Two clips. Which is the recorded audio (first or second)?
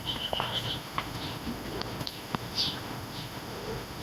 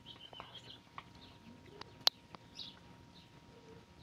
second